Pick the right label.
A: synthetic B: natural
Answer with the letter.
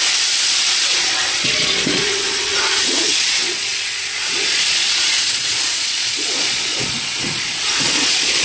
A